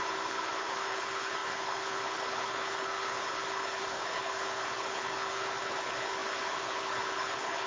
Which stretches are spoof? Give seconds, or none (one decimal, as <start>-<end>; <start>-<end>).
0.0-7.7